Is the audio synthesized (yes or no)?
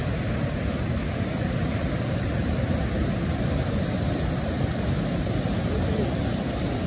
no